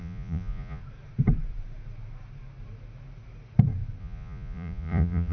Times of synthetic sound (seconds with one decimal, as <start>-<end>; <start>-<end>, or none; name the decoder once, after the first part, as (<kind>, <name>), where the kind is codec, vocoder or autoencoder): 0.0-0.8 (vocoder, Vocos); 4.0-5.3